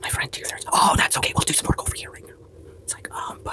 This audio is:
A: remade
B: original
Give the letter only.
B